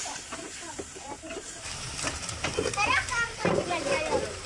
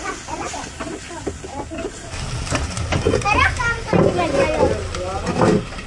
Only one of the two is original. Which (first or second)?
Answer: second